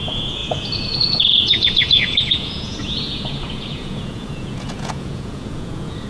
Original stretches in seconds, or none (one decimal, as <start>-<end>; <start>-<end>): none